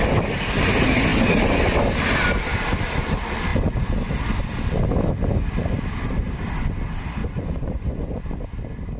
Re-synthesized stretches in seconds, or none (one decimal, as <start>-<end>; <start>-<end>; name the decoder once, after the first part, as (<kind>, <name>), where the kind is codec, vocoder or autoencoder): 7.2-8.2 (vocoder, Vocos)